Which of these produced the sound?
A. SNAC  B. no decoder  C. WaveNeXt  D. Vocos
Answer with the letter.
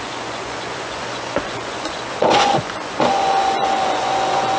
D